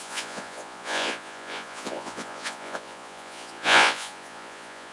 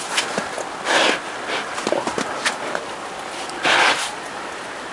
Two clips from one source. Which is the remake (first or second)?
first